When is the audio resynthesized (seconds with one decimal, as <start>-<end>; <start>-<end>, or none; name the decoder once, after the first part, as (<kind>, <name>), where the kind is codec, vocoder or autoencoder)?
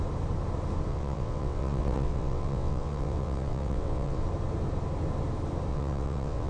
0.9-4.2 (vocoder, WaveNeXt); 5.7-6.5